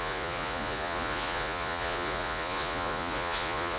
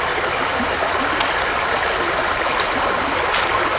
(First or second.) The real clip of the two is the second